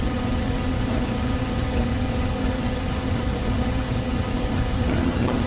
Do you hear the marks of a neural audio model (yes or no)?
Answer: yes